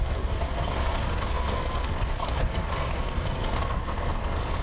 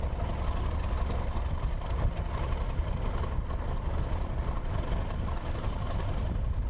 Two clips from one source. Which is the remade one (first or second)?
first